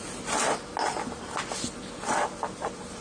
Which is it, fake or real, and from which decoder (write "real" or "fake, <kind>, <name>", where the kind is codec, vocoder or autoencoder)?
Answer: real